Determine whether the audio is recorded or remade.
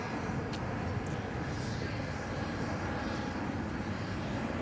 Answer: recorded